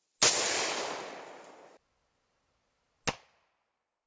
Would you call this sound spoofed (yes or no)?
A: no